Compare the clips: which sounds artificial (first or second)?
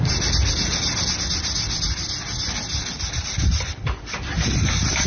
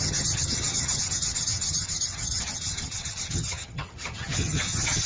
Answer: second